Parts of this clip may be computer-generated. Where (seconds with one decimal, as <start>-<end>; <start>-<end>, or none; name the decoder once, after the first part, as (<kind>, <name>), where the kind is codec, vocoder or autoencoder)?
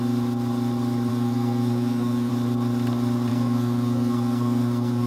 1.1-2.3 (codec, SNAC); 3.3-5.1